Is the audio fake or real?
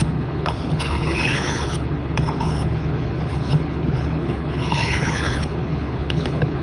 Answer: fake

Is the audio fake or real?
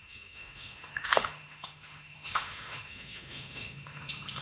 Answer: fake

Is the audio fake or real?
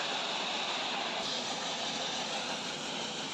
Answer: real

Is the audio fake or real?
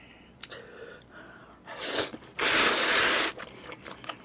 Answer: real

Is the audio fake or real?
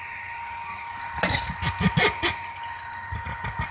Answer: real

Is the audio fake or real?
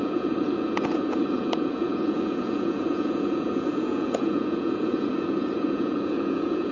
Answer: fake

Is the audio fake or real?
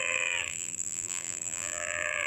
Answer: fake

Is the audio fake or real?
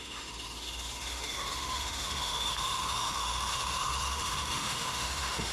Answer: fake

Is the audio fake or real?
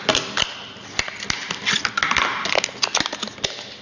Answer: real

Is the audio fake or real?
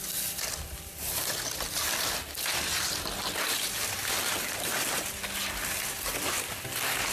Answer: real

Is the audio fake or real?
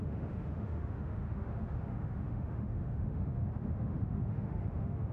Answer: fake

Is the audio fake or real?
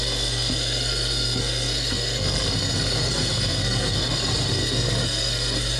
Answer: fake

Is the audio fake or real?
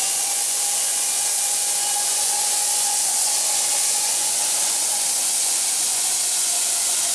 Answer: fake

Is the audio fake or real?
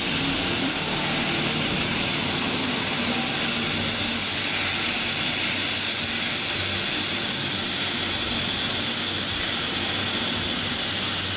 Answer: real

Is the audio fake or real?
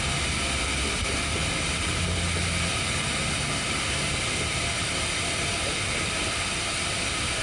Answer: real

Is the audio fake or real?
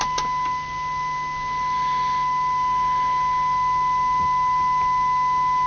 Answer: real